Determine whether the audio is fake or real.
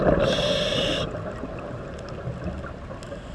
real